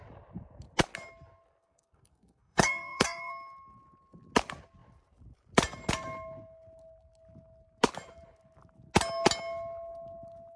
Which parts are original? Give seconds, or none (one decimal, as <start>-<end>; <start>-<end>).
0.0-1.6; 3.3-10.6